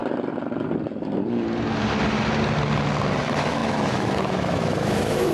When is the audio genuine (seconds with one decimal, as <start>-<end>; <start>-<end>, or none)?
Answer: 0.0-3.2